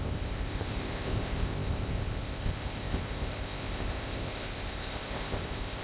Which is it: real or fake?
fake